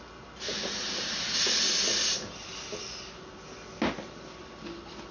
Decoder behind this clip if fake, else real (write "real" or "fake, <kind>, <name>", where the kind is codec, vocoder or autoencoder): real